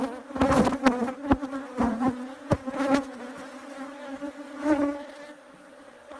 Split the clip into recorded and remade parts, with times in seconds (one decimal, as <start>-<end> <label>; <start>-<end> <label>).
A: 0.0-1.9 recorded; 1.9-3.5 remade; 3.5-6.2 recorded